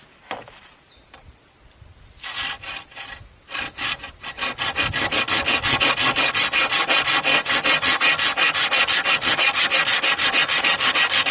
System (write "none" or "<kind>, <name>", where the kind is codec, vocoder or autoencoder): none